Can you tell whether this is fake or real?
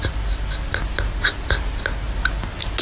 real